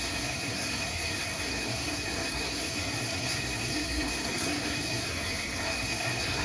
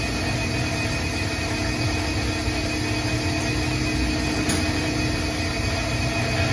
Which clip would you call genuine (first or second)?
second